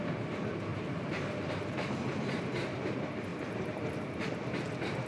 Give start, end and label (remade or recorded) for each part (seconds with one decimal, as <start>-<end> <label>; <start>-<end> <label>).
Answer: 0.0-0.7 recorded; 0.7-2.4 remade; 2.4-3.3 recorded; 3.3-4.3 remade; 4.3-5.1 recorded